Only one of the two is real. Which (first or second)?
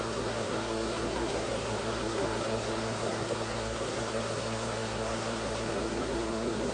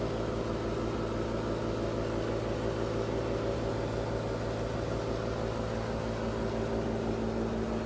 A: second